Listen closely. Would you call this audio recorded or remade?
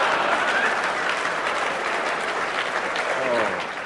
remade